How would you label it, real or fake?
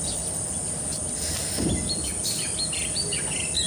real